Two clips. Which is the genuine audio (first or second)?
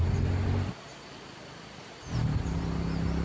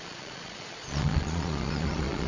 first